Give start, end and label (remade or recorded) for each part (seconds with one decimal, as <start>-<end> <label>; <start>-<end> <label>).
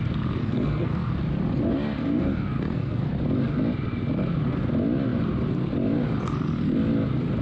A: 0.0-0.4 recorded; 0.4-1.1 remade; 1.1-2.0 recorded; 2.0-3.1 remade; 3.1-7.4 recorded